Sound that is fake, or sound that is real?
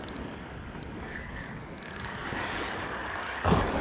fake